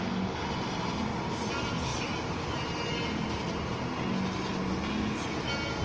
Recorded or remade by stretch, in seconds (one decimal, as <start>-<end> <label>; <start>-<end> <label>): 0.0-5.8 recorded

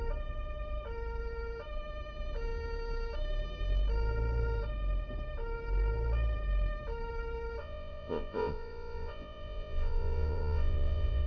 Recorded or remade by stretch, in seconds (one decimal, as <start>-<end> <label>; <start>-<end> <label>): 0.0-7.6 recorded; 7.6-11.3 remade

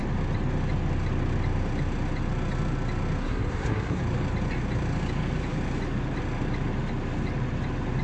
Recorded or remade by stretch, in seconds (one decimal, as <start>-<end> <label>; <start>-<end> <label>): 0.0-3.2 recorded; 3.2-4.0 remade; 4.0-8.0 recorded

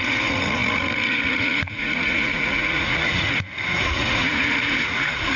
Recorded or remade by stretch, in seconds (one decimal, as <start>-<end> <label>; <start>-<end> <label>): 0.0-5.4 remade

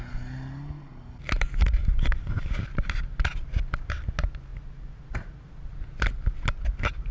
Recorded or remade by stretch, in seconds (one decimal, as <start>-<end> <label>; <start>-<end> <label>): 0.0-2.2 recorded; 2.2-3.1 remade; 3.1-4.5 recorded; 4.5-5.5 remade; 5.5-7.1 recorded

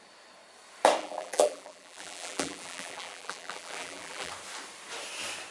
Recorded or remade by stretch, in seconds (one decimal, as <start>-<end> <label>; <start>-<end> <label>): 0.0-1.0 recorded; 1.0-4.3 remade; 4.3-5.5 recorded

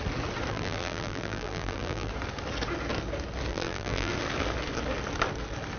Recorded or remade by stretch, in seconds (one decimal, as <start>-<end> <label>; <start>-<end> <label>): 0.0-0.5 recorded; 0.5-2.1 remade; 2.1-3.5 recorded; 3.5-4.1 remade; 4.1-5.8 recorded